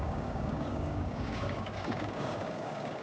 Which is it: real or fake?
fake